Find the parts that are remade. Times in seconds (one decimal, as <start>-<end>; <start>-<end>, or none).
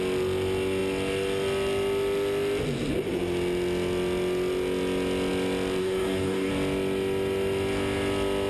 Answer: 5.8-6.5